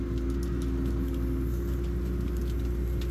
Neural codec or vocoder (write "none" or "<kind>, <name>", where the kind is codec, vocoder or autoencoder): none